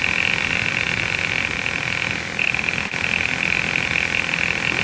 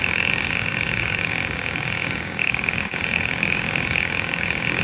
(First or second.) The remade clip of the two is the second